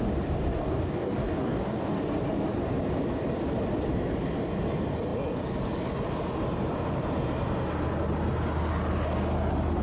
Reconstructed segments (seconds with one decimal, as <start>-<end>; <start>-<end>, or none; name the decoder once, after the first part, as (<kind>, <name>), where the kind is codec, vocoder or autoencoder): 0.6-2.0 (codec, DAC)